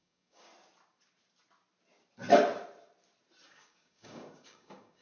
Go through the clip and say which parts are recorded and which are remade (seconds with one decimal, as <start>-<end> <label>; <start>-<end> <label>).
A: 0.0-0.5 remade; 0.5-3.5 recorded; 3.5-5.0 remade